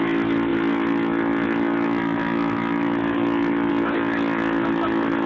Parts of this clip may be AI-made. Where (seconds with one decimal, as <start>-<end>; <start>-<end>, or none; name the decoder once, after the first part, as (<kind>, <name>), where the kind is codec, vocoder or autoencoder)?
none